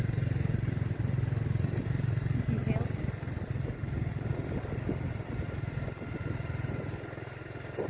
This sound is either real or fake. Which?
real